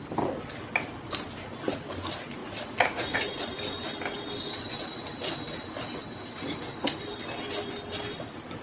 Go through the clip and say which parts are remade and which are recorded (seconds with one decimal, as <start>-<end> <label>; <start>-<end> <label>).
0.0-2.4 recorded; 2.4-3.3 remade; 3.3-8.6 recorded